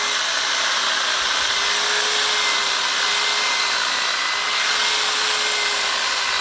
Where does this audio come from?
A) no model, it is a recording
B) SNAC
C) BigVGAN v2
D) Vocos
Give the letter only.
A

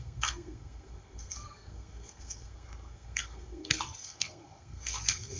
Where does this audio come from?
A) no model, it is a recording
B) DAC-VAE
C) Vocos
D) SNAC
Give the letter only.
D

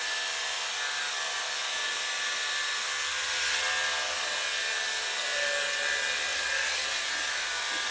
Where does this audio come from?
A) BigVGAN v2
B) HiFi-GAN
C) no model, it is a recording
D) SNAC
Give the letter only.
C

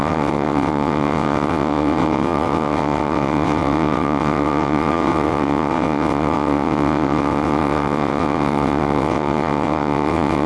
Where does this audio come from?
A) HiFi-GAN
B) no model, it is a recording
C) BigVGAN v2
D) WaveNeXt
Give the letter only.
D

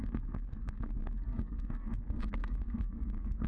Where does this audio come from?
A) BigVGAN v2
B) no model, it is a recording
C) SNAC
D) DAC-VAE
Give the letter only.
C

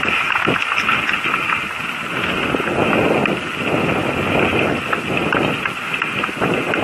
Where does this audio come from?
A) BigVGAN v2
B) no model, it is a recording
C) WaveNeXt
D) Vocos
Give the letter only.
B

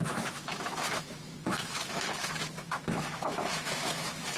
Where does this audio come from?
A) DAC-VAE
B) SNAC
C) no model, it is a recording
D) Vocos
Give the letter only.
A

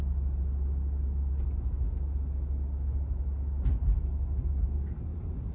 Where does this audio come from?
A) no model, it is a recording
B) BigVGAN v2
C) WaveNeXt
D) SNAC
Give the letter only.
A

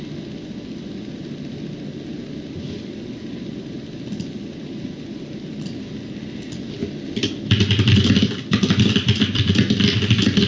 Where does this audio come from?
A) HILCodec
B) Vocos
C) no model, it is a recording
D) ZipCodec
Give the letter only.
C